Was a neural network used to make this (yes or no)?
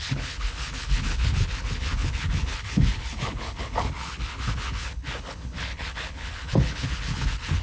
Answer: yes